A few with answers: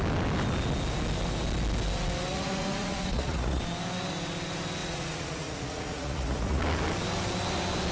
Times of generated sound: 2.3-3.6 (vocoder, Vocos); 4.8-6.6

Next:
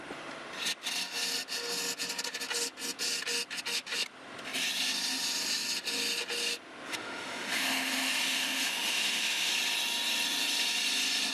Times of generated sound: 6.9-9.5 (autoencoder, DAC-VAE)

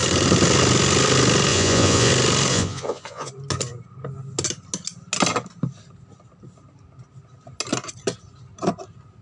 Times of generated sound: 1.5-2.1 (vocoder, Vocos); 2.5-3.3